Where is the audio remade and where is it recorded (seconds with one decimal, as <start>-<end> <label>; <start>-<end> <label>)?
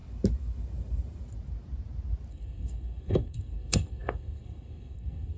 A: 0.0-2.3 recorded; 2.3-5.4 remade